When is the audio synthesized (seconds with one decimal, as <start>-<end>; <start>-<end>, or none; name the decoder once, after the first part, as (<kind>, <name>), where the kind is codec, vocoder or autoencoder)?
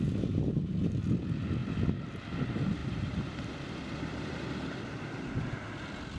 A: 2.8-5.5 (vocoder, BigVGAN v2)